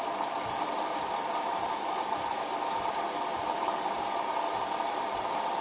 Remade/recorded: recorded